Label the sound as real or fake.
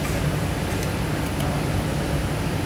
real